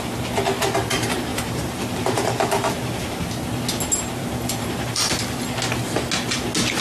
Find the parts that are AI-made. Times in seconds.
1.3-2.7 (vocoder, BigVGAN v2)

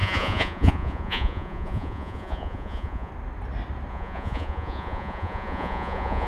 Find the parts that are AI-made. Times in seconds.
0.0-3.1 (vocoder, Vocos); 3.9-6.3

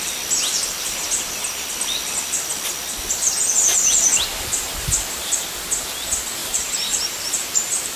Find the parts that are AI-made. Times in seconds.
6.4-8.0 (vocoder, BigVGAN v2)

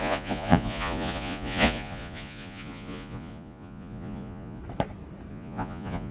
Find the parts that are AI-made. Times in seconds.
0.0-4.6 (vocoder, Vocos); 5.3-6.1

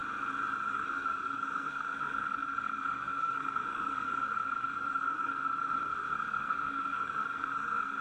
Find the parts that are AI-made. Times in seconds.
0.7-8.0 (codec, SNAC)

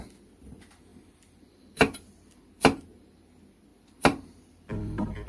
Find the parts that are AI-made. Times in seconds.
0.9-2.5 (vocoder, BigVGAN v2); 3.7-5.3

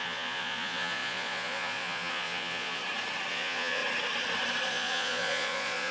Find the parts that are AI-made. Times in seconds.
0.0-2.8 (vocoder, Vocos); 3.3-3.8; 4.7-5.9